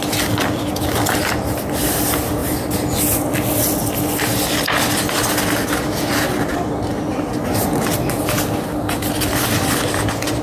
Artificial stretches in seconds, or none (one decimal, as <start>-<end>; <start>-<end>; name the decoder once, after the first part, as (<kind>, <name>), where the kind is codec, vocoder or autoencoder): 6.5-7.3 (vocoder, BigVGAN v2)